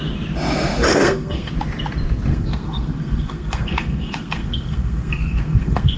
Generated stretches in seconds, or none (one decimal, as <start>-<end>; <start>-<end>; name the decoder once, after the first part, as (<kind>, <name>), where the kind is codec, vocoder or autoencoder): 0.9-1.5 (codec, SNAC); 2.3-6.0

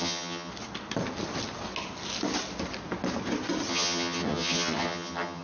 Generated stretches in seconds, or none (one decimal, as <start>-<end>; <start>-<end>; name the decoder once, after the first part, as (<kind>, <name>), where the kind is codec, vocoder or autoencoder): 0.0-0.5 (vocoder, HiFi-GAN); 3.7-5.4

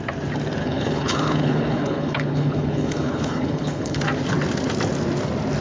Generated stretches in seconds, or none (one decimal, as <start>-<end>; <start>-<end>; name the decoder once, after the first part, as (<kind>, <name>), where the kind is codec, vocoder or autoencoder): 0.6-4.0 (codec, HILCodec)

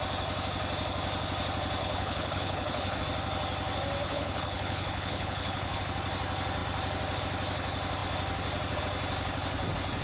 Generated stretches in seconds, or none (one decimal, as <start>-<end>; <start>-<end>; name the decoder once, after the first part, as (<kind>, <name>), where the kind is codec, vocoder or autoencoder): 1.8-3.0 (codec, HILCodec); 4.0-5.8

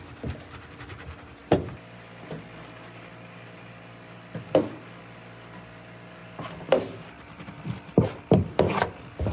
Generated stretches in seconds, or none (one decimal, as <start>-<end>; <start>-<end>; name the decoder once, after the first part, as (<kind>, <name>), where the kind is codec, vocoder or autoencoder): none